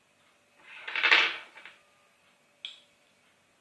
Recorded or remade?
recorded